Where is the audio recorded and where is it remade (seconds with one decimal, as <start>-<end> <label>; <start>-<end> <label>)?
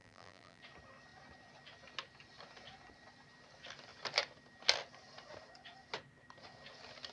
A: 0.0-0.6 remade; 0.6-7.1 recorded